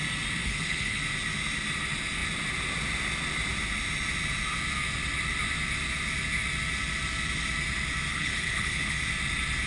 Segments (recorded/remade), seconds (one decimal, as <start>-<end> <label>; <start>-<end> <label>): 0.0-0.4 recorded; 0.4-1.0 remade; 1.0-8.1 recorded; 8.1-9.0 remade; 9.0-9.7 recorded